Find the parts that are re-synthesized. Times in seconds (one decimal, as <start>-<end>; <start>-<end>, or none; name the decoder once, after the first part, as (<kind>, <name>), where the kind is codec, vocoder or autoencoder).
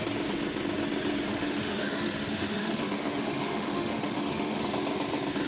1.3-4.6 (autoencoder, DAC-VAE)